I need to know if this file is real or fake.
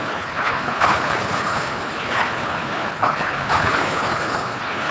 fake